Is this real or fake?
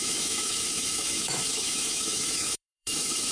fake